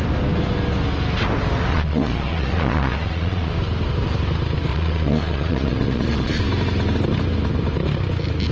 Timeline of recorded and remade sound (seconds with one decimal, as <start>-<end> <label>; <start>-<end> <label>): 0.0-1.7 recorded; 1.7-3.5 remade; 3.5-4.7 recorded; 4.7-6.4 remade; 6.4-8.5 recorded